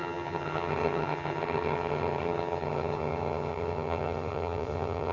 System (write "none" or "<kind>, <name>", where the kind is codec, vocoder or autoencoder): vocoder, HiFi-GAN